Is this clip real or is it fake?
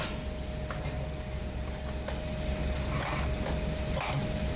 real